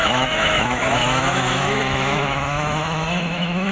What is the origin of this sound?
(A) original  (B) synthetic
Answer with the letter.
B